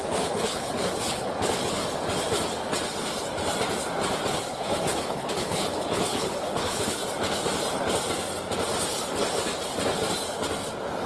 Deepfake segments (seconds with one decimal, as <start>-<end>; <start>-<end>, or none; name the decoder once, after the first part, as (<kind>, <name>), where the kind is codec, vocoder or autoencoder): 0.0-1.8 (codec, HILCodec); 4.5-7.0